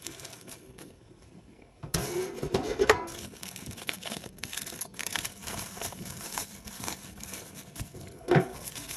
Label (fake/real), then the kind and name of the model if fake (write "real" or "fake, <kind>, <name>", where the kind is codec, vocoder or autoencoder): fake, codec, SNAC